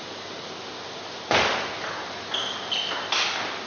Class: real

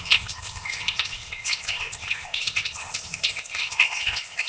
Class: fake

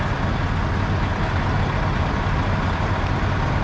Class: real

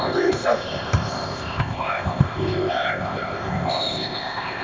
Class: fake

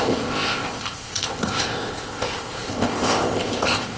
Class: fake